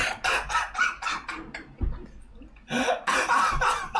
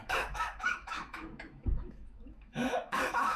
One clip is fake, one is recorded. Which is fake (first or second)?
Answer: second